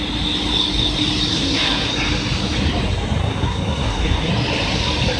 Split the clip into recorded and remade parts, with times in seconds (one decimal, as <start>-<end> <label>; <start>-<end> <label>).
0.0-1.3 recorded; 1.3-1.9 remade; 1.9-3.2 recorded; 3.2-4.3 remade; 4.3-5.2 recorded